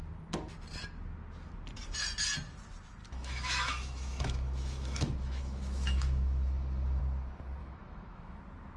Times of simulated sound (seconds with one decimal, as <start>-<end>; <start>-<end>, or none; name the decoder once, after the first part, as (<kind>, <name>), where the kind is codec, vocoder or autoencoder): 3.0-7.0 (autoencoder, DAC-VAE); 7.6-8.4